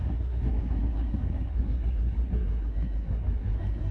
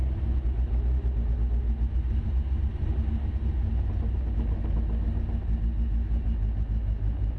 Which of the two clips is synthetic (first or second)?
first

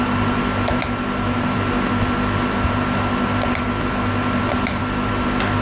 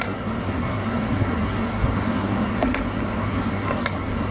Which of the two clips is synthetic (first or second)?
second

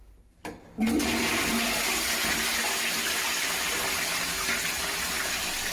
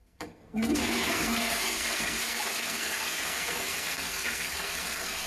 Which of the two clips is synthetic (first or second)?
second